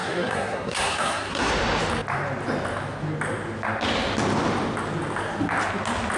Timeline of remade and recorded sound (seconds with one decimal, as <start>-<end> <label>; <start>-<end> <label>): 0.0-1.5 remade; 1.5-6.2 recorded